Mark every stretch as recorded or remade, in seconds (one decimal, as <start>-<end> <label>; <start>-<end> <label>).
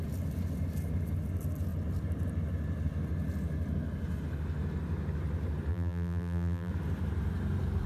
0.0-5.7 recorded; 5.7-6.7 remade; 6.7-7.9 recorded